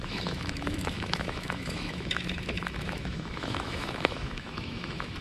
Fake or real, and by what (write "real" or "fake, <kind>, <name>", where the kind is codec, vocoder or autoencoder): fake, autoencoder, DAC-VAE